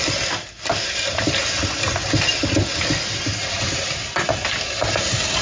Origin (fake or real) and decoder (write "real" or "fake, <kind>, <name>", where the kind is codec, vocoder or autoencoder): real